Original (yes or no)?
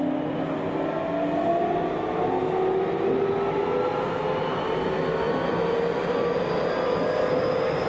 yes